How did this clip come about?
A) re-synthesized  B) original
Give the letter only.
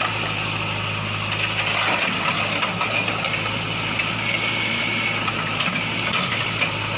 B